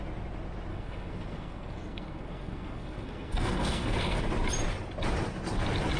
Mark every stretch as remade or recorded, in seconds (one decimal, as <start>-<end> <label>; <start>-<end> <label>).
0.0-0.7 recorded; 0.7-4.3 remade; 4.3-6.0 recorded